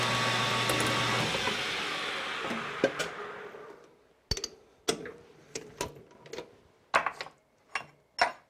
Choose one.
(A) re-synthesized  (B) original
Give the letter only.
B